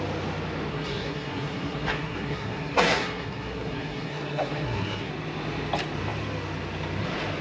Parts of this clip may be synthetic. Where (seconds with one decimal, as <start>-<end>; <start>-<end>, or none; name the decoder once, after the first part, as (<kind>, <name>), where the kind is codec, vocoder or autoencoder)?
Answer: 0.7-5.1 (codec, SNAC)